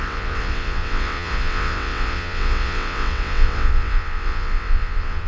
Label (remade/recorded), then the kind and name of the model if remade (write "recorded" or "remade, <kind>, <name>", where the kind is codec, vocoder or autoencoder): remade, vocoder, WaveNeXt